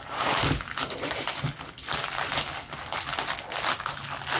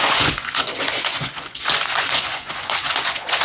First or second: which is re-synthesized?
second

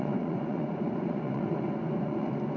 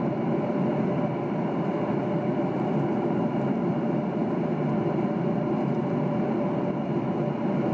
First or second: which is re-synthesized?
first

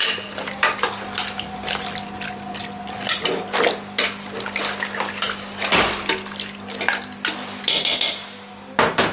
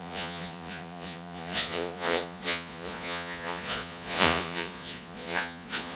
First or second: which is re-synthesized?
second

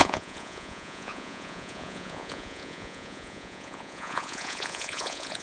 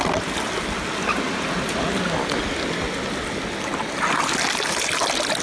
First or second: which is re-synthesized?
first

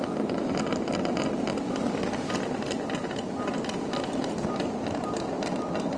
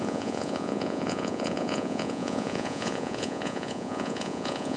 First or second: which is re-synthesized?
second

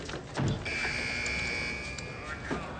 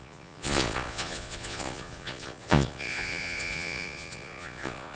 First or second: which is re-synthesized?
second